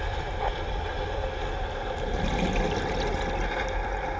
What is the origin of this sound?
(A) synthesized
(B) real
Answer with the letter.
B